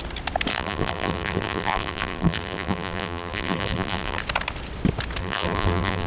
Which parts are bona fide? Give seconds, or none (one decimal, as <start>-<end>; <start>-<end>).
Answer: 0.0-0.5; 4.2-5.2